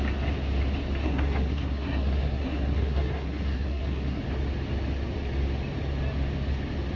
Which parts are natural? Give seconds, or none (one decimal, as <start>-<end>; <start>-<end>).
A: 0.0-1.0; 4.2-7.0